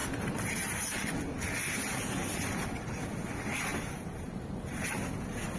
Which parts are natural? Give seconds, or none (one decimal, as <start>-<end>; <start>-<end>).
0.0-3.7; 4.8-5.6